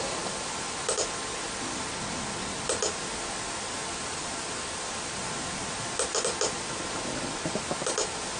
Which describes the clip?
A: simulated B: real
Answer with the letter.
A